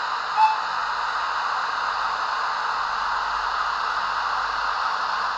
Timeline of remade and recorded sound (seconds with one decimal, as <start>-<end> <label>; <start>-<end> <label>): 0.0-5.4 recorded